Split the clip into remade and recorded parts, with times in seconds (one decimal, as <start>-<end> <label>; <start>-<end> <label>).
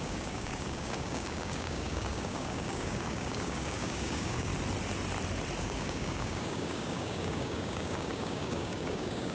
0.0-4.5 remade; 4.5-5.6 recorded; 5.6-9.3 remade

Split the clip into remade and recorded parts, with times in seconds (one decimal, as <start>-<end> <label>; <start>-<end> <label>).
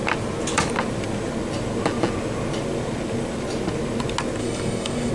0.0-4.4 recorded; 4.4-5.1 remade